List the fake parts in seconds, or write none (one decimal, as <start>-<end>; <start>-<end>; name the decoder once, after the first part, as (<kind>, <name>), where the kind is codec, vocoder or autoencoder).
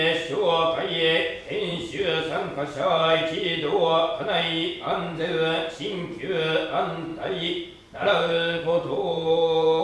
1.6-5.3 (vocoder, Vocos); 7.1-9.8